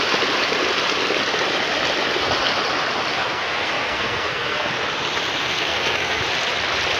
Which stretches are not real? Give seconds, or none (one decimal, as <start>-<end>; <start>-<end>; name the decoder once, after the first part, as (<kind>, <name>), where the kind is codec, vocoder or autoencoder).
3.1-4.7 (codec, SNAC); 5.4-6.2